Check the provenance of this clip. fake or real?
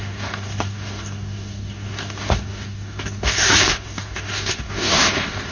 fake